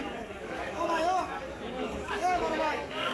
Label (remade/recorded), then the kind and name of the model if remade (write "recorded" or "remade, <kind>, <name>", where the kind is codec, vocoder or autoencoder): remade, codec, DAC